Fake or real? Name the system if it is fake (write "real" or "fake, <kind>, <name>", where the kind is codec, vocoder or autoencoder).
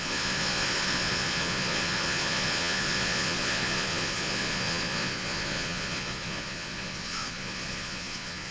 fake, vocoder, Vocos